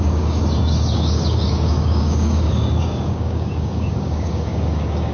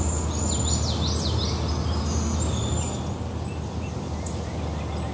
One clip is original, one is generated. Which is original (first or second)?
second